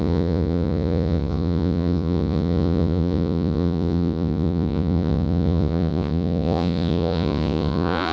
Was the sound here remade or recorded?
remade